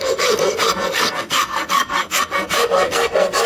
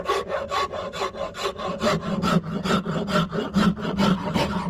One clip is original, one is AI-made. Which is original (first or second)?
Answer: second